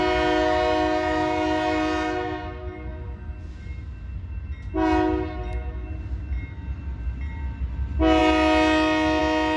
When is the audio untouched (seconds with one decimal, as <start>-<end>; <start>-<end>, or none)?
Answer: 0.0-9.6